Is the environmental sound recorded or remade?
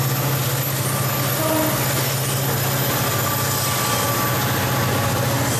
recorded